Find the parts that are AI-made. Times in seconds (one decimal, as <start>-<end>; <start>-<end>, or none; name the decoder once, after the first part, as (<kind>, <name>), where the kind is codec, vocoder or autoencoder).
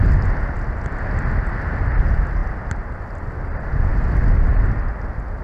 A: none